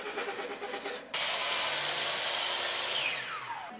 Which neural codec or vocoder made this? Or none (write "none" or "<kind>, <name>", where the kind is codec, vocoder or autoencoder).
none